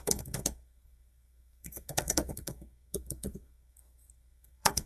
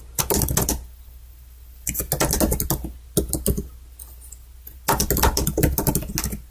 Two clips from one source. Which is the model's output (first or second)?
first